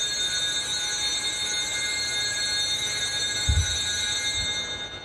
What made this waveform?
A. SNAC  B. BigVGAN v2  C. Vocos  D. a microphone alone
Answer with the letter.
D